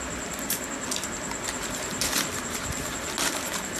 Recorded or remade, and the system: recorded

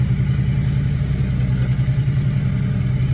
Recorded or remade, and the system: recorded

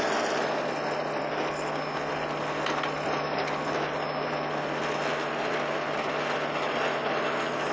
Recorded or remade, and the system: recorded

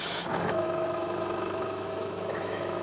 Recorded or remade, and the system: remade, autoencoder, DAC-VAE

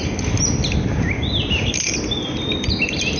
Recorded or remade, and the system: recorded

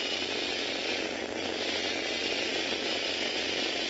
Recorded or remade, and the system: recorded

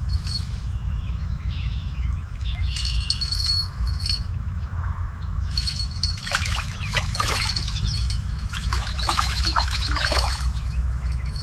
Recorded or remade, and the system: remade, autoencoder, DAC-VAE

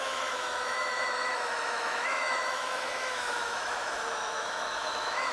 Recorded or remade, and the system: remade, autoencoder, DAC-VAE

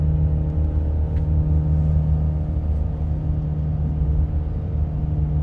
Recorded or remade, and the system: recorded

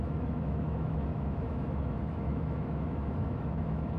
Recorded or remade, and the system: remade, autoencoder, DAC-VAE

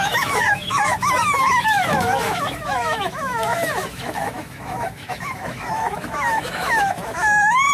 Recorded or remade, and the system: remade, autoencoder, DAC-VAE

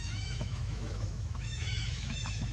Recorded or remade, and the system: remade, autoencoder, DAC-VAE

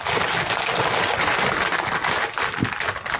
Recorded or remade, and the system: recorded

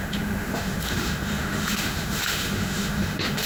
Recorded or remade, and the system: remade, autoencoder, DAC-VAE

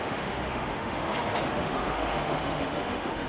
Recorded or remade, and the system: remade, autoencoder, DAC-VAE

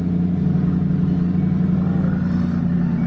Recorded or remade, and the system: recorded